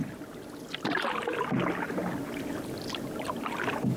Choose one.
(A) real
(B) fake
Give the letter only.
A